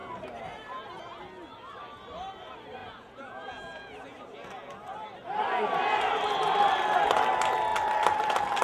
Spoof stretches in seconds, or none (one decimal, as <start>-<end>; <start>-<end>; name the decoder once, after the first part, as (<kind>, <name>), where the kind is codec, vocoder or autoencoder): 2.8-4.2 (vocoder, Vocos)

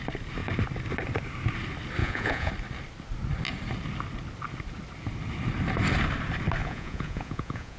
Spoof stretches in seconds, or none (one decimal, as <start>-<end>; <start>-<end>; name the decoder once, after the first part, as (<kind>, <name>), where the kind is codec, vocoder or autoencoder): 2.0-2.5 (vocoder, Vocos); 6.6-7.8

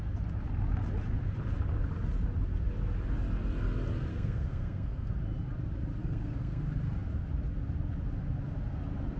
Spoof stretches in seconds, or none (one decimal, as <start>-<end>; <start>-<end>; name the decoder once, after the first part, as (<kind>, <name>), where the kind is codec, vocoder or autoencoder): 4.1-5.1 (codec, SNAC); 6.0-6.6

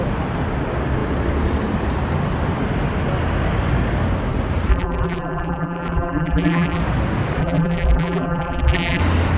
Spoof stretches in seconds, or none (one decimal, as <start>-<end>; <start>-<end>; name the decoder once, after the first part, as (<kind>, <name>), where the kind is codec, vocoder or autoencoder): 4.7-6.8 (vocoder, BigVGAN v2); 7.4-9.0

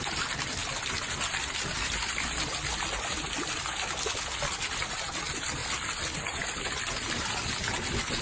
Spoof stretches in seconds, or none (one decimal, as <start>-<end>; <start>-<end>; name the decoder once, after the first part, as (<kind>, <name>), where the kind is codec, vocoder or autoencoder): none

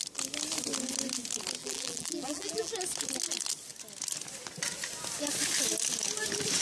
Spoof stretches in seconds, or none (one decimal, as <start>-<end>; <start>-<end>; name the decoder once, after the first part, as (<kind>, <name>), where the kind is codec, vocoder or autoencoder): 1.6-2.7 (vocoder, BigVGAN v2)

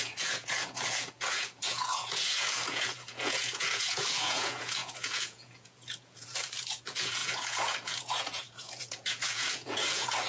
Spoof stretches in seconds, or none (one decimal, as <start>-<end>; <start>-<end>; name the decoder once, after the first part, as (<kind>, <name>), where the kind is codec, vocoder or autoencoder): 0.0-10.3 (vocoder, Vocos)

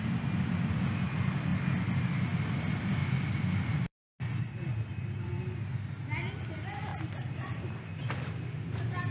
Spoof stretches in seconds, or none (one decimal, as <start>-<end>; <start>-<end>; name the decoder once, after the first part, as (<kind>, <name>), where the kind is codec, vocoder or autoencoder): 3.0-4.7 (vocoder, BigVGAN v2); 6.9-8.0